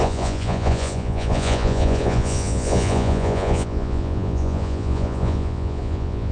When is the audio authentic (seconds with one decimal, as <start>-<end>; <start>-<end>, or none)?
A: none